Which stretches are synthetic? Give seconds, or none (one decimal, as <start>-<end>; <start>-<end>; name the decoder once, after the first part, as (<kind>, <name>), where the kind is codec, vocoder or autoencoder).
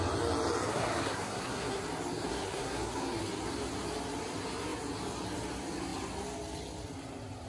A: 0.7-1.8 (codec, SNAC); 2.3-3.2